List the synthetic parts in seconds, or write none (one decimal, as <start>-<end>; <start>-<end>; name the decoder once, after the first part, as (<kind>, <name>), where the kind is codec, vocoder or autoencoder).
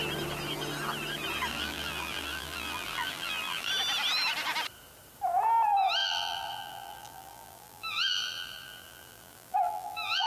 1.5-3.7 (vocoder, BigVGAN v2); 6.0-10.3